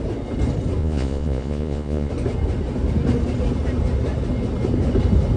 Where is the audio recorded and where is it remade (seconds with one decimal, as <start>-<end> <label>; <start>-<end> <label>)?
0.0-0.8 recorded; 0.8-2.1 remade; 2.1-5.4 recorded